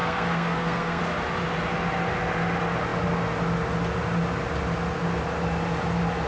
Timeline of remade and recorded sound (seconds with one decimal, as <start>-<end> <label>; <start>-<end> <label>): 0.0-1.0 remade; 1.0-6.3 recorded